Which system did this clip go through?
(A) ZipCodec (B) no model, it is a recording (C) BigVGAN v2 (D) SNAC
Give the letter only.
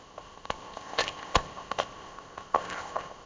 A